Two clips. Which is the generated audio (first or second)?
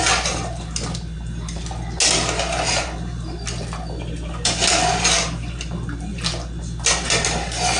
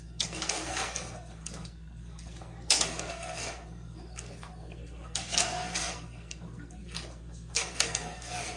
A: second